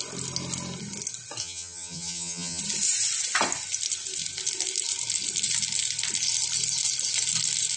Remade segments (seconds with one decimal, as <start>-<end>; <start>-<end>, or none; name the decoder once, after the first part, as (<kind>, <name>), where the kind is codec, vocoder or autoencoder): 1.4-2.6 (vocoder, HiFi-GAN)